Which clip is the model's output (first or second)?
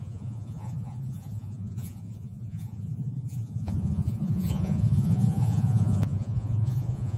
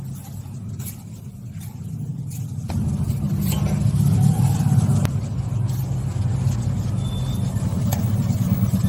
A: first